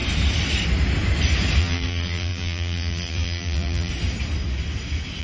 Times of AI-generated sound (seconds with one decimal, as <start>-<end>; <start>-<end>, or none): 1.6-3.9